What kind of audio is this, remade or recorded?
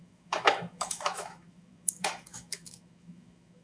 remade